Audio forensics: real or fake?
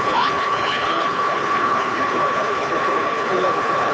fake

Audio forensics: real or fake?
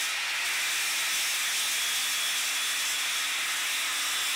real